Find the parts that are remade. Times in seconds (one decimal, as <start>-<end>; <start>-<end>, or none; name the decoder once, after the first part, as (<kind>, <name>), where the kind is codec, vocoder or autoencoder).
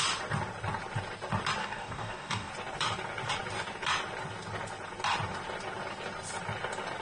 1.6-2.5 (codec, DAC)